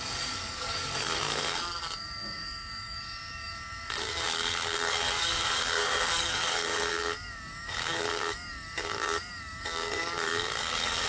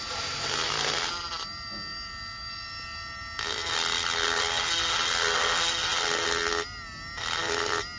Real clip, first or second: second